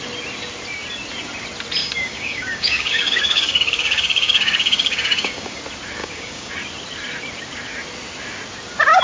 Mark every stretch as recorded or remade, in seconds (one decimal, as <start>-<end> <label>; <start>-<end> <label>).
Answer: 0.0-1.8 recorded; 1.8-5.6 remade; 5.6-6.0 recorded; 6.0-6.5 remade; 6.5-9.0 recorded